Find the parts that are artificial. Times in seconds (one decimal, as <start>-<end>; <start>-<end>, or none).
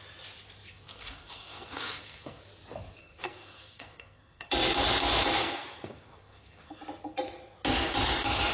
0.7-2.4; 3.0-4.5; 5.4-6.8